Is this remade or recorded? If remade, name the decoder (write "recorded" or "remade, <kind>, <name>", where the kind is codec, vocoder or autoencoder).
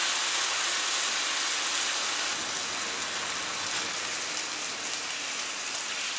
recorded